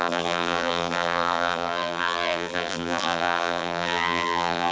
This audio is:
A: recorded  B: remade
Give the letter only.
B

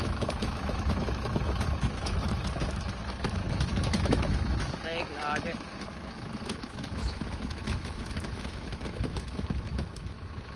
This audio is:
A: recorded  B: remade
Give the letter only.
B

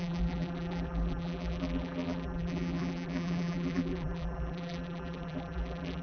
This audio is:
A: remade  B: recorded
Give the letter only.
A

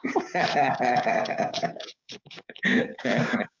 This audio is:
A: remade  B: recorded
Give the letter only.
A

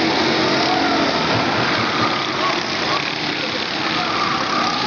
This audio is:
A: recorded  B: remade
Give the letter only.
A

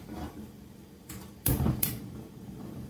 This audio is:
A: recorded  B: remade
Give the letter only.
B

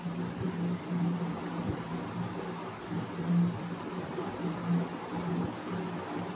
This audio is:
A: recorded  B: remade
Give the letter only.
B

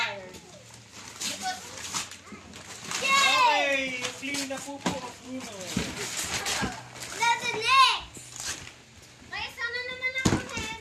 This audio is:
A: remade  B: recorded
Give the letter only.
B